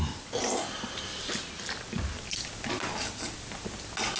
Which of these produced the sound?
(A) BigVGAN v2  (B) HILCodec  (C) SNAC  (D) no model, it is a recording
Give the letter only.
D